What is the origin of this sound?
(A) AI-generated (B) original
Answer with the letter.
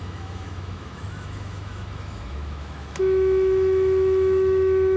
A